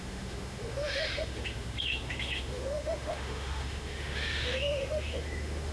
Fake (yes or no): yes